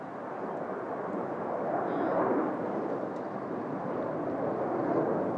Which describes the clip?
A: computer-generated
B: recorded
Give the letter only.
B